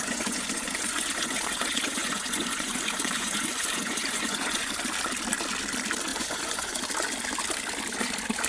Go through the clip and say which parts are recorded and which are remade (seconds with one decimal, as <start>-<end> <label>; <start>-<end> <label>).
0.0-4.7 remade; 4.7-6.1 recorded; 6.1-6.8 remade; 6.8-8.5 recorded